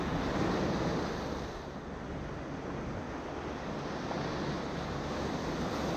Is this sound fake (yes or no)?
no